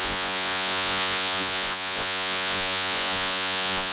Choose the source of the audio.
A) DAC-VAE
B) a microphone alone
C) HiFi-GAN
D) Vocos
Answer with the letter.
D